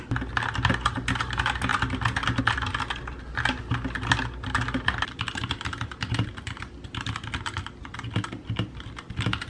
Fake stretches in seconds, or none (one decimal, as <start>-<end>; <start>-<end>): none